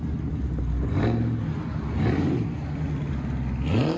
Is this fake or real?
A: real